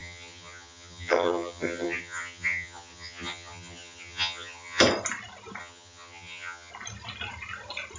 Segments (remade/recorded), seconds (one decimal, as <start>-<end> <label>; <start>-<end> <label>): 0.0-4.8 remade; 4.8-5.6 recorded; 5.6-6.7 remade; 6.7-8.0 recorded